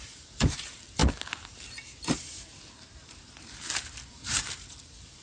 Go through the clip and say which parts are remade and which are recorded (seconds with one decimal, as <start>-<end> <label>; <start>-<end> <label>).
0.0-1.0 remade; 1.0-4.1 recorded; 4.1-5.2 remade